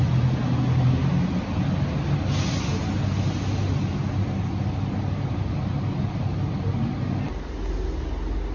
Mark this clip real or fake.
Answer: real